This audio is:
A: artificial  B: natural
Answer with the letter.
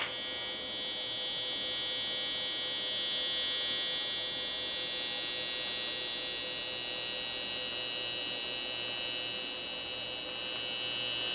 B